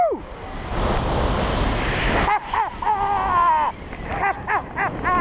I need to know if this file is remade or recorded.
recorded